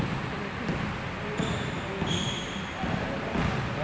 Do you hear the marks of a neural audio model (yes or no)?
no